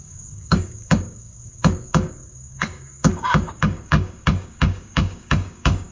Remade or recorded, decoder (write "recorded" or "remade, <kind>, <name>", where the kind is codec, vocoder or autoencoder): remade, codec, DAC